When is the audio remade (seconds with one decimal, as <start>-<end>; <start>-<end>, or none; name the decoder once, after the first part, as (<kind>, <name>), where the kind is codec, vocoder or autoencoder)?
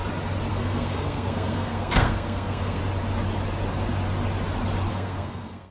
0.5-2.8 (codec, SNAC); 4.9-5.7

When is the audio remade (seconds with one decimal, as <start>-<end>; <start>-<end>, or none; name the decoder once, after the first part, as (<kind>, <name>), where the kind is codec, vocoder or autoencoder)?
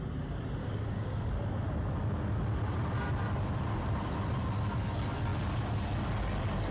0.6-1.3 (codec, DAC)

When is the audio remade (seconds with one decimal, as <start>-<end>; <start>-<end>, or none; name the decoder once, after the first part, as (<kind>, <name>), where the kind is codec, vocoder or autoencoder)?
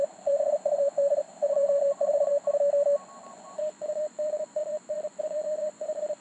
0.0-2.3 (vocoder, Vocos); 3.3-6.2